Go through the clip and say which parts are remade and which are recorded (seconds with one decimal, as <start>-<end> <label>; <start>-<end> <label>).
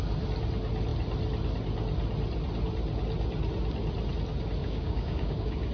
0.0-4.6 recorded; 4.6-5.7 remade